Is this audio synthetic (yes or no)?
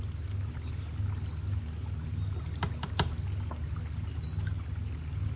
no